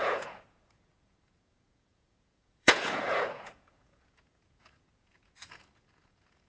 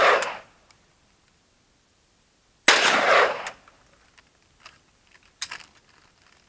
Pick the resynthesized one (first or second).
first